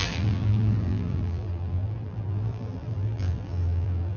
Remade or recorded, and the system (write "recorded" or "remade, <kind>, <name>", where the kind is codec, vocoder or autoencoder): remade, vocoder, BigVGAN v2